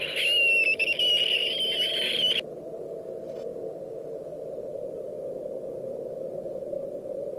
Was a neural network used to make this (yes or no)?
no